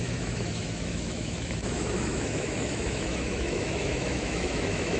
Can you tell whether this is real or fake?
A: fake